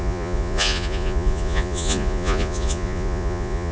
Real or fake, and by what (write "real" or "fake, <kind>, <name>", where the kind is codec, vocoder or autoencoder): fake, vocoder, Vocos